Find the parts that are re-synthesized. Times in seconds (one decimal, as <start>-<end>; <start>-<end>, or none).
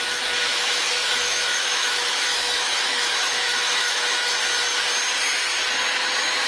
0.5-4.3